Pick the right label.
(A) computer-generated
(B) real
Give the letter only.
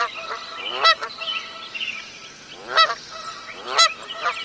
B